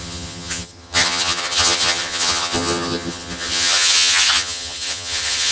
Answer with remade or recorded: remade